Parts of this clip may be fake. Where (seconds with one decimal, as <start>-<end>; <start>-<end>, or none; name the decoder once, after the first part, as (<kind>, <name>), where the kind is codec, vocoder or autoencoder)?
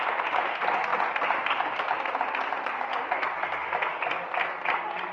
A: none